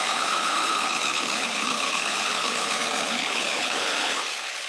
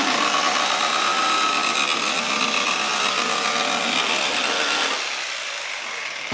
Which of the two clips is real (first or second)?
second